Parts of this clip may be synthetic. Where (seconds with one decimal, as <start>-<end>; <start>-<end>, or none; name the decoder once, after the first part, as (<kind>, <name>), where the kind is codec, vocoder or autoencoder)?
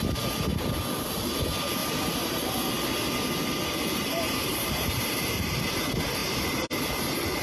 1.8-2.5 (vocoder, BigVGAN v2); 4.0-5.5; 6.2-6.7